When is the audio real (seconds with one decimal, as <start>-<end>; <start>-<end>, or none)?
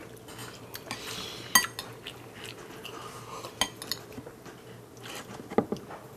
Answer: 0.0-6.2